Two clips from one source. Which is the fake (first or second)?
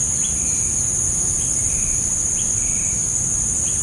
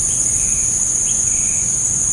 second